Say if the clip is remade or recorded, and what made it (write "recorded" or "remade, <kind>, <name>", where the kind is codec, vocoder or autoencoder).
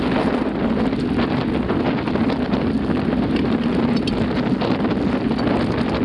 recorded